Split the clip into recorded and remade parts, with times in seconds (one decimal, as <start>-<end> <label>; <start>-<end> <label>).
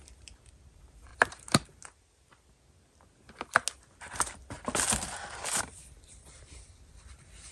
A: 0.0-1.1 remade; 1.1-5.6 recorded; 5.6-7.5 remade